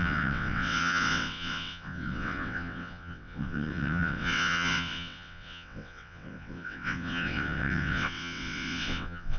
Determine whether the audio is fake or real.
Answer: fake